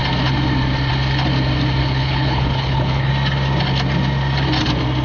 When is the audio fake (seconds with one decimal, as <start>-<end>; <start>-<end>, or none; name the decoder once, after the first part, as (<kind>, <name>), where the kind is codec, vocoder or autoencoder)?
1.8-3.1 (codec, HILCodec)